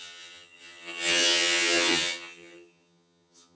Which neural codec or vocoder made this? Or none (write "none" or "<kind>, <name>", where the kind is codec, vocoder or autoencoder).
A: vocoder, HiFi-GAN